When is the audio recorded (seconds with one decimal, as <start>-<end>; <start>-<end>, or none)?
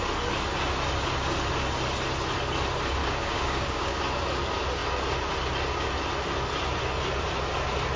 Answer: 0.0-3.0; 3.9-8.0